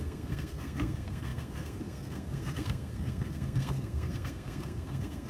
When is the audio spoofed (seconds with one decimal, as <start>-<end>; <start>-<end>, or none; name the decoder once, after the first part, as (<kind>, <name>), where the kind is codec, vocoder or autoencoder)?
0.0-5.3 (codec, SNAC)